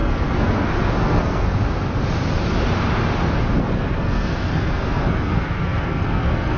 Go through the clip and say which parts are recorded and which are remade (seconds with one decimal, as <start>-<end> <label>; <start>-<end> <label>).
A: 0.0-1.6 remade; 1.6-3.6 recorded; 3.6-6.6 remade